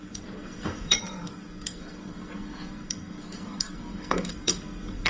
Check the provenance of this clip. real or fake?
fake